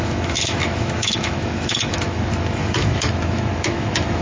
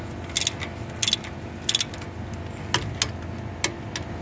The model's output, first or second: first